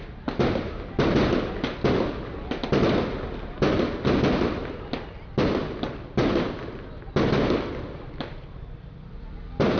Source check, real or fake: real